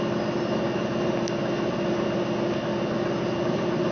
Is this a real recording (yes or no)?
yes